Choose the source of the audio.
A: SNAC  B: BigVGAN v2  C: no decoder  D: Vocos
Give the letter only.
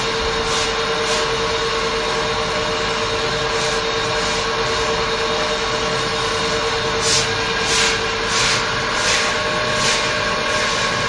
C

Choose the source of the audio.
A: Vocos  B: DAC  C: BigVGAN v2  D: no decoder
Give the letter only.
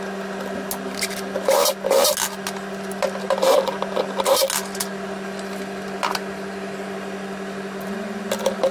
D